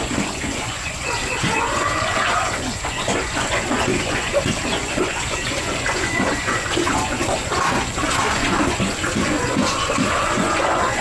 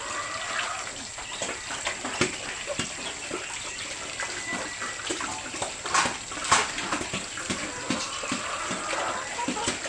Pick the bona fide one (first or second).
second